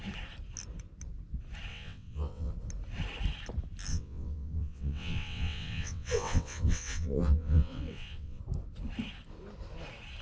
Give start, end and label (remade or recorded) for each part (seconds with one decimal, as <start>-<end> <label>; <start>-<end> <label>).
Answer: 0.0-1.7 recorded; 1.7-2.5 remade; 2.5-3.9 recorded; 3.9-8.4 remade; 8.4-10.2 recorded